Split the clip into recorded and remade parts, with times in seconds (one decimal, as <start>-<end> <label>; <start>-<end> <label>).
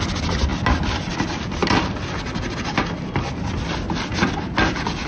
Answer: 0.0-5.1 recorded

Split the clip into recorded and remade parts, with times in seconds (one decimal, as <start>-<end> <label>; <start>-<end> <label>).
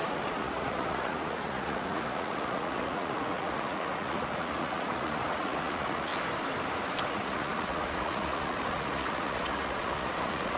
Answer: 0.0-6.1 remade; 6.1-7.1 recorded; 7.1-10.6 remade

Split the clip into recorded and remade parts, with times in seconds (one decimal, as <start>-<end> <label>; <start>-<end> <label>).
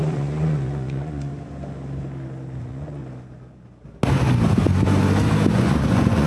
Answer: 0.0-1.3 remade; 1.3-2.6 recorded; 2.6-3.0 remade; 3.0-5.5 recorded; 5.5-6.3 remade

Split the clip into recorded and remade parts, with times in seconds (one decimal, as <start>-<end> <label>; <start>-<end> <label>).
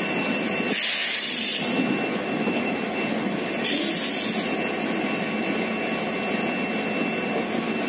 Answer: 0.0-7.9 recorded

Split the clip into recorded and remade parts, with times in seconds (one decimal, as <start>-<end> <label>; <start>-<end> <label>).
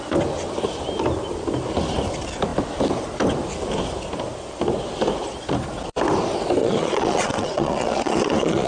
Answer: 0.0-6.6 recorded; 6.6-8.7 remade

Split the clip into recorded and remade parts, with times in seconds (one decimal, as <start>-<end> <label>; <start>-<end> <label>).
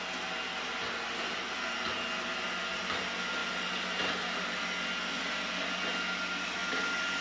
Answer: 0.0-7.2 recorded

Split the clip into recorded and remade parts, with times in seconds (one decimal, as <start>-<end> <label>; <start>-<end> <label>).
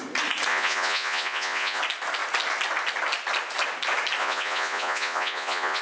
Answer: 0.0-0.5 recorded; 0.5-1.8 remade; 1.8-4.2 recorded; 4.2-5.8 remade